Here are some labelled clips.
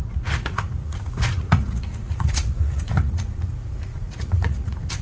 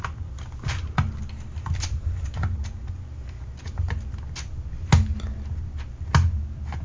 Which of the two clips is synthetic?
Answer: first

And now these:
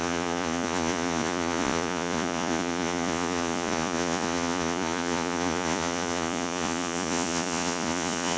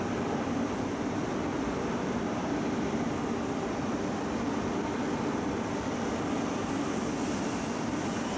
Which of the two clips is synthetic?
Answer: first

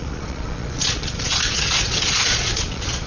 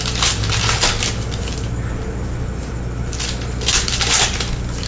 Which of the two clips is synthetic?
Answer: first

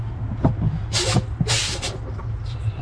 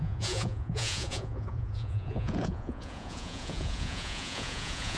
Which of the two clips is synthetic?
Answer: second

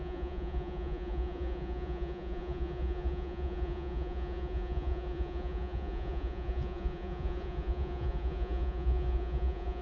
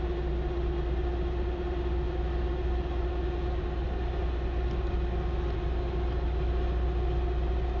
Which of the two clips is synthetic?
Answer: first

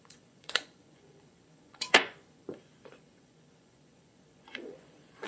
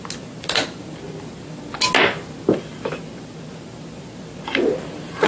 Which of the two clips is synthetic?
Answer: first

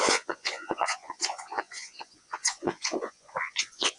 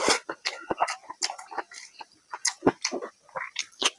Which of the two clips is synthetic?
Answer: first